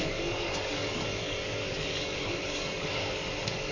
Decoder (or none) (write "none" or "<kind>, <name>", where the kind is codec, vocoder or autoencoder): codec, DAC